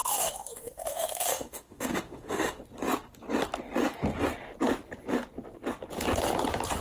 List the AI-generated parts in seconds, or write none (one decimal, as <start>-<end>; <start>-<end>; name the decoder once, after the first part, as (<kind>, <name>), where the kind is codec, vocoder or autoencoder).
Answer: 0.0-2.6 (autoencoder, DAC-VAE)